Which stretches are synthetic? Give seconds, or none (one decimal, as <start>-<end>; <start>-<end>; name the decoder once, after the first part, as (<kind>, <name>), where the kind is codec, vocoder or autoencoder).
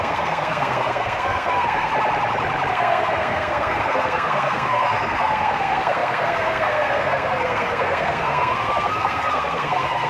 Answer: 0.0-1.9 (codec, SNAC); 2.7-10.1